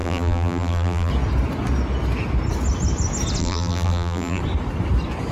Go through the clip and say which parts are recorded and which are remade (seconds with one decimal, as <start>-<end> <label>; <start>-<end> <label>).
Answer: 0.0-1.1 remade; 1.1-3.4 recorded; 3.4-4.4 remade; 4.4-5.3 recorded